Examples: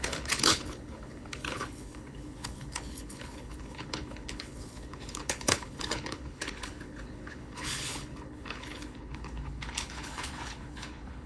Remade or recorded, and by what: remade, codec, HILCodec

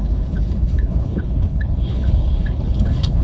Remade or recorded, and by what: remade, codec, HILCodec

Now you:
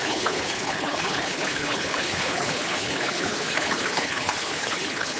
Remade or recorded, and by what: remade, codec, HILCodec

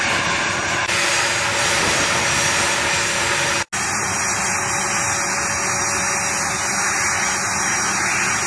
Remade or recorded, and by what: recorded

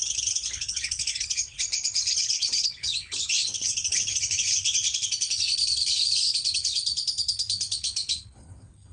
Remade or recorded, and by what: remade, codec, HILCodec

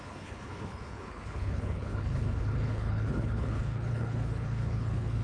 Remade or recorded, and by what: remade, codec, HILCodec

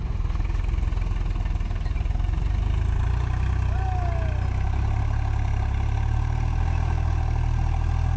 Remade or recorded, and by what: recorded